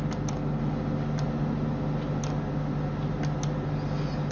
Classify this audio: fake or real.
real